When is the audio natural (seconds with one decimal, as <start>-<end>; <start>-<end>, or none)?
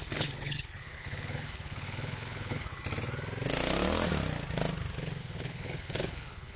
2.7-5.2